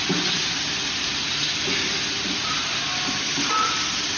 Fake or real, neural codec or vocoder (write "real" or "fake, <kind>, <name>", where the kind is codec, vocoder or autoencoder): real